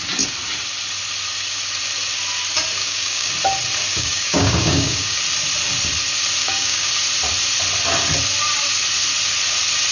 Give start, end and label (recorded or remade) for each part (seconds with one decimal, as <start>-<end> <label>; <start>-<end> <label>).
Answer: 0.0-2.8 recorded; 2.8-3.3 remade; 3.3-3.9 recorded; 3.9-5.2 remade; 5.2-6.4 recorded; 6.4-6.9 remade; 6.9-9.9 recorded